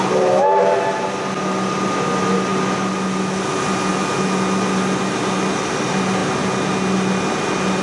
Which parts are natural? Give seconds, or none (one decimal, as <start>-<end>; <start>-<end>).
0.0-7.8